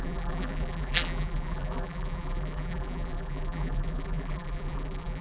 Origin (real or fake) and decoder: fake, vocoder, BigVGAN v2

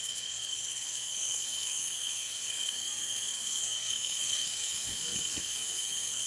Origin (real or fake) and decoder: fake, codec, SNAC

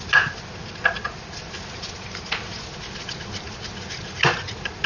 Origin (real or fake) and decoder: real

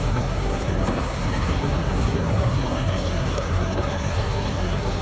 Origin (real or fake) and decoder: fake, codec, SNAC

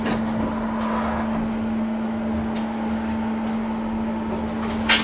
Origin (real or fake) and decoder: real